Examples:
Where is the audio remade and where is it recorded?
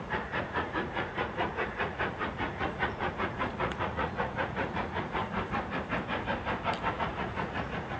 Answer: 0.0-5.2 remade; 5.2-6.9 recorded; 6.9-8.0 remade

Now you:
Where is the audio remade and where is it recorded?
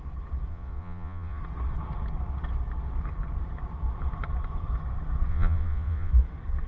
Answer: 0.0-0.5 recorded; 0.5-1.4 remade; 1.4-5.3 recorded; 5.3-6.1 remade; 6.1-6.7 recorded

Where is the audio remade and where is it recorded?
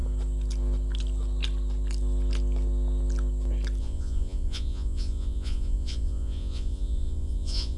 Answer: 0.0-3.8 recorded; 3.8-7.8 remade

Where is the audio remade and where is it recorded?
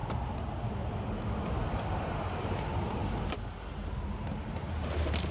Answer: 0.0-5.3 recorded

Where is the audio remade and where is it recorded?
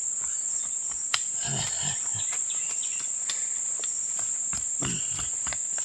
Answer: 0.0-5.8 recorded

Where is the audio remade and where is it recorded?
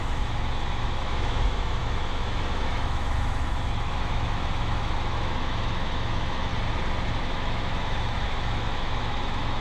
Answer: 0.0-6.5 remade; 6.5-7.2 recorded; 7.2-9.6 remade